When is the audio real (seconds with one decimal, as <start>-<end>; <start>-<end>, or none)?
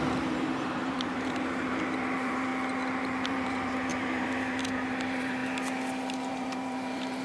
2.5-3.0; 5.4-6.3